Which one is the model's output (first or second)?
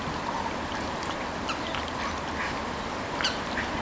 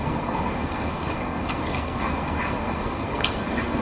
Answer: second